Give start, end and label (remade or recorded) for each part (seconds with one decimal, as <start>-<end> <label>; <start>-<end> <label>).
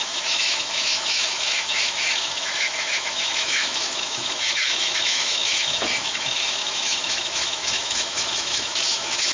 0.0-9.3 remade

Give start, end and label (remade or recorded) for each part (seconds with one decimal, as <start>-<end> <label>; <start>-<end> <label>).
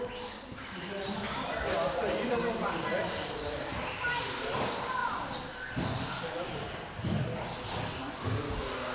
0.0-8.9 recorded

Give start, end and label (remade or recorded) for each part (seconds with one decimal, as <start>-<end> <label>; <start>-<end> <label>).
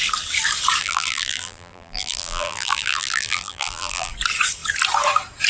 0.0-0.8 recorded; 0.8-4.1 remade; 4.1-5.5 recorded